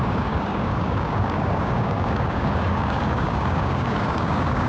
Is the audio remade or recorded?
remade